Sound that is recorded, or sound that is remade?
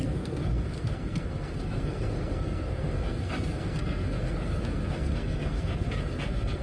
remade